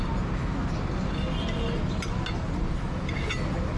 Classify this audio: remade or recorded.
recorded